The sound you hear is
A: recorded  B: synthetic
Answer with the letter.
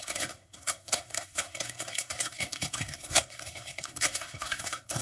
B